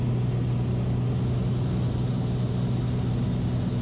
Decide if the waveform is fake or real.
real